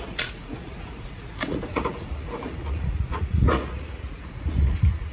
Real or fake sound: fake